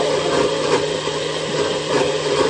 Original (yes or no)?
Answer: no